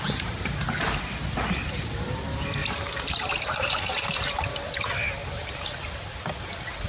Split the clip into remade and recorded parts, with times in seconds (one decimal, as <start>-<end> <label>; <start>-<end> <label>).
0.0-2.6 recorded; 2.6-4.7 remade; 4.7-5.2 recorded; 5.2-5.9 remade; 5.9-6.9 recorded